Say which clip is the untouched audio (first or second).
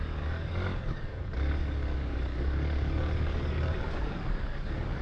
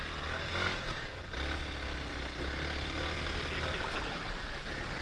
second